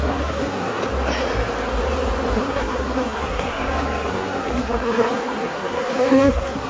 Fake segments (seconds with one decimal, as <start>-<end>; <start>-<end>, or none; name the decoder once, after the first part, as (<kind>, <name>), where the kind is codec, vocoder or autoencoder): 0.0-0.8 (codec, SNAC); 2.4-6.7